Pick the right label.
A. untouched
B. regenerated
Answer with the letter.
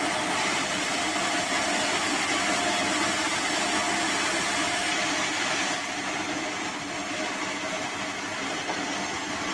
A